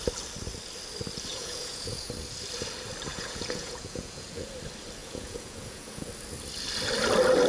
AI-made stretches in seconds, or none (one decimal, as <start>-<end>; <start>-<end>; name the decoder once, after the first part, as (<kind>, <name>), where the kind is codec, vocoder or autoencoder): 1.3-2.1 (vocoder, Vocos); 3.1-4.5; 5.0-6.1